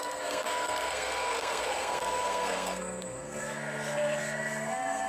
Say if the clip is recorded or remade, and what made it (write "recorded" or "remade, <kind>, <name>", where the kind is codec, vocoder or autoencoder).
remade, codec, SNAC